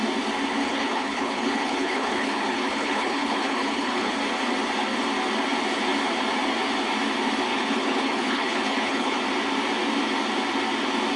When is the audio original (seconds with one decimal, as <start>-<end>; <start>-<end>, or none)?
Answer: 0.0-0.6; 4.1-7.5; 9.2-11.2